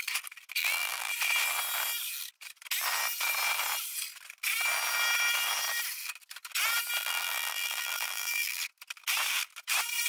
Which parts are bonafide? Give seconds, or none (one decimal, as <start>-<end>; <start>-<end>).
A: 0.0-0.6; 1.1-7.0; 8.6-10.1